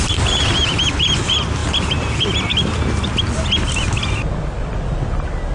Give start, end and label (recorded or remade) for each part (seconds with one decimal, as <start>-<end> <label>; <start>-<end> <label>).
0.0-1.6 recorded; 1.6-2.1 remade; 2.1-5.5 recorded